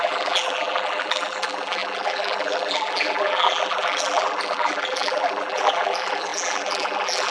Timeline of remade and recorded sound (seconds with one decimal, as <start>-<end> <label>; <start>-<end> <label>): 0.0-7.3 remade